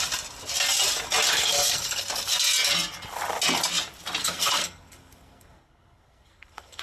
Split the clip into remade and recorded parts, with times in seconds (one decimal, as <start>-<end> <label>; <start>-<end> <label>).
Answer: 0.0-1.3 recorded; 1.3-2.0 remade; 2.0-4.2 recorded; 4.2-6.8 remade